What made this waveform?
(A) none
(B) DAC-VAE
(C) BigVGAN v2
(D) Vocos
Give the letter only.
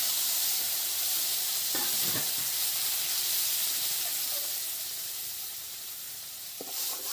C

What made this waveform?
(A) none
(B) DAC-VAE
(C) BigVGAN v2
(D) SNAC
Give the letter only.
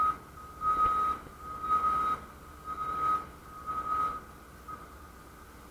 A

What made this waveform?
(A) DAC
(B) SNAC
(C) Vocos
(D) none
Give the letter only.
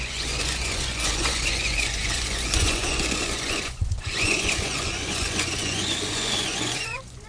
C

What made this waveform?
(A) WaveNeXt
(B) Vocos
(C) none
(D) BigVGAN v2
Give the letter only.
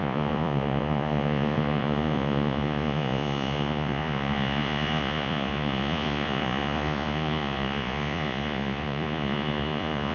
B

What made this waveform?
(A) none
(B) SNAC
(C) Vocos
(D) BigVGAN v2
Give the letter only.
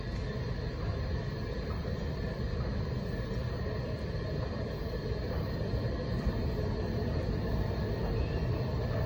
A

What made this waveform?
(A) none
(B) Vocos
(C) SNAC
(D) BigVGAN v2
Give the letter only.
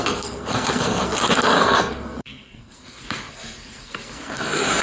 C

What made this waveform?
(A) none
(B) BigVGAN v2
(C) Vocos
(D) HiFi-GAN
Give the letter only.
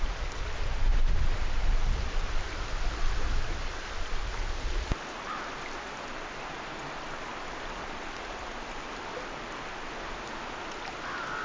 A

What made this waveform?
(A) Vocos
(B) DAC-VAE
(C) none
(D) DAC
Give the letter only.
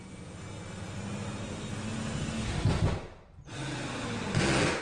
C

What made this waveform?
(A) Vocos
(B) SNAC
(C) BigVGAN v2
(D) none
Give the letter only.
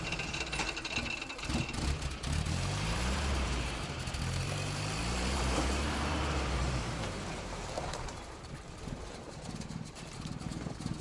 C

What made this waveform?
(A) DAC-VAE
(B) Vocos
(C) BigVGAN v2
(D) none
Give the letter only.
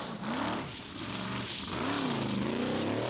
D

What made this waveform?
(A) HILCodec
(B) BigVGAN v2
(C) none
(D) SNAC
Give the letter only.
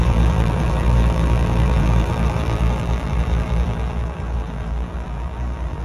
B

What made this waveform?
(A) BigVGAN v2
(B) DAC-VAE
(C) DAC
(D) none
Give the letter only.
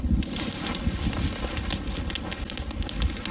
D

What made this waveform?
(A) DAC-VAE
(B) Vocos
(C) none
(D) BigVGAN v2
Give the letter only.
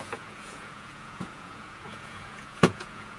B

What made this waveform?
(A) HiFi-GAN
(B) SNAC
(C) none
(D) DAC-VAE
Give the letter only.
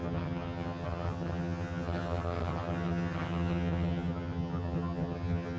A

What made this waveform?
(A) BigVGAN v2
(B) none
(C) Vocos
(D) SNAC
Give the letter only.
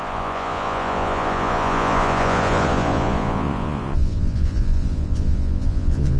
C